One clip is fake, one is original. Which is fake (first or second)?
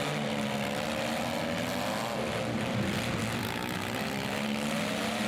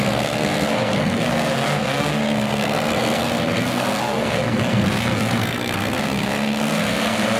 second